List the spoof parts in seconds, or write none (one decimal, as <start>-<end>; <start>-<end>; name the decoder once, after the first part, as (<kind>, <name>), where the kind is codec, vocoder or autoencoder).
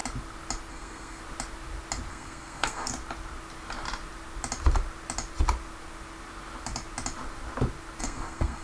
0.7-1.2 (codec, SNAC); 2.1-2.9; 8.0-8.6